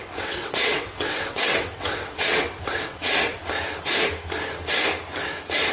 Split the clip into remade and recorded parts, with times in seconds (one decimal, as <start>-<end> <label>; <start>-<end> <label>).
0.0-3.4 remade; 3.4-5.7 recorded

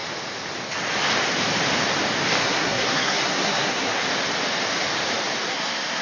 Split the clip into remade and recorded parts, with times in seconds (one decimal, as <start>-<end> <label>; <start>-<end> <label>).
0.0-2.4 recorded; 2.4-4.0 remade; 4.0-5.5 recorded; 5.5-6.0 remade

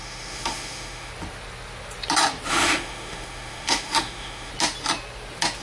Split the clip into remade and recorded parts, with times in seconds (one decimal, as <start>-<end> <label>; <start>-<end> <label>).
0.0-1.1 remade; 1.1-2.5 recorded; 2.5-4.5 remade; 4.5-5.6 recorded